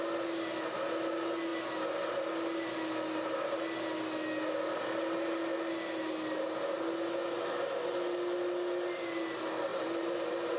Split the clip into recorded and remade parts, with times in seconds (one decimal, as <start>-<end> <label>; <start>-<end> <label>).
0.0-9.7 recorded; 9.7-10.6 remade